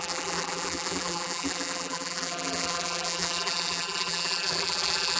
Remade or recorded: remade